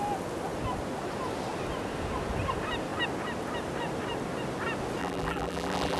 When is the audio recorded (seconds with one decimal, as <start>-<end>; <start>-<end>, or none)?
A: 0.0-5.0

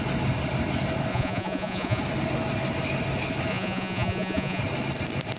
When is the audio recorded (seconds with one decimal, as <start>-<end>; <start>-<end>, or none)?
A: 0.0-1.1; 2.0-3.5; 4.6-5.4

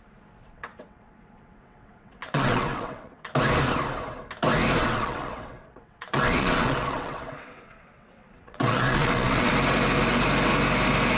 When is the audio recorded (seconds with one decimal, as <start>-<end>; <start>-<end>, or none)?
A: 0.0-0.4; 3.3-4.8; 9.5-11.2

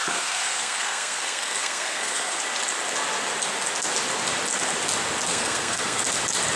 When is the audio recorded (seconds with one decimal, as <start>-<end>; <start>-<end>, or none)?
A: 2.4-5.3; 6.0-6.6

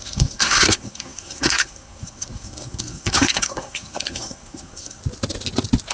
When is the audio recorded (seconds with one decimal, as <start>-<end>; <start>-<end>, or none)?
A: 5.0-5.9

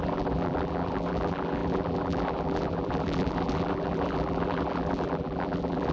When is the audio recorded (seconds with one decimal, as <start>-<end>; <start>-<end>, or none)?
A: none

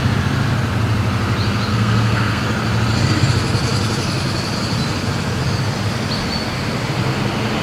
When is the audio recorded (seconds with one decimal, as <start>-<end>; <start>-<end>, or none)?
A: 0.0-1.7; 2.4-7.6

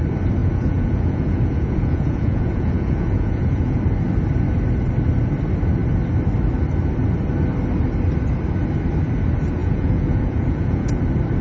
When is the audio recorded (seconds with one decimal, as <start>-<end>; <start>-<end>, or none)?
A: 0.0-0.4; 3.8-9.6; 11.0-11.4